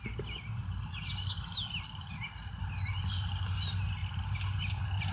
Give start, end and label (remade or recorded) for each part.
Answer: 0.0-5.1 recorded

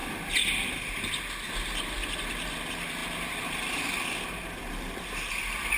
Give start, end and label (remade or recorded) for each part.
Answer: 0.0-1.1 remade; 1.1-5.8 recorded

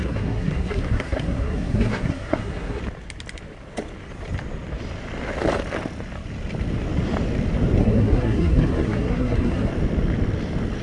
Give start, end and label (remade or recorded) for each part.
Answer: 0.0-2.8 remade; 2.8-7.8 recorded; 7.8-9.7 remade; 9.7-10.8 recorded

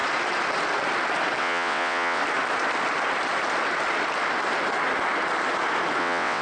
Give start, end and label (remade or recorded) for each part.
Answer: 0.0-1.4 recorded; 1.4-2.2 remade; 2.2-6.0 recorded; 6.0-6.4 remade

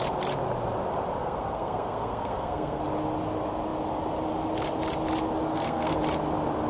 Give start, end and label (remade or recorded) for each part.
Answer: 0.0-1.2 recorded; 1.2-2.8 remade; 2.8-5.5 recorded; 5.5-6.0 remade; 6.0-6.7 recorded

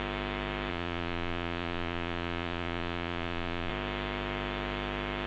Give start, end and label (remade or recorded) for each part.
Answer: 0.0-0.7 recorded; 0.7-3.7 remade; 3.7-5.3 recorded